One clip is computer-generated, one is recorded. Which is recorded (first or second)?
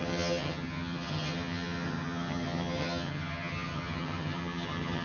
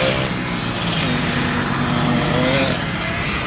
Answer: second